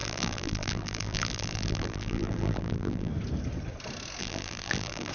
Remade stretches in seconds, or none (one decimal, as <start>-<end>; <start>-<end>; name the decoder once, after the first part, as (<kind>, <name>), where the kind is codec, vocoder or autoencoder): 0.0-3.1 (vocoder, BigVGAN v2); 4.2-5.1